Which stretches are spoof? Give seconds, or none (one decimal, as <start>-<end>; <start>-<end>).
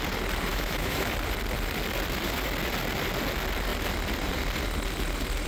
0.5-1.1